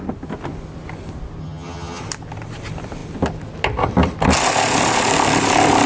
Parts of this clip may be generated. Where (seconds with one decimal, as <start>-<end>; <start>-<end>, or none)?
1.4-2.0